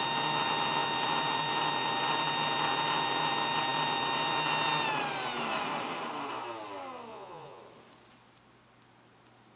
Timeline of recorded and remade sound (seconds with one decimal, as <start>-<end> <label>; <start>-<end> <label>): 0.0-7.1 recorded; 7.1-7.6 remade; 7.6-9.6 recorded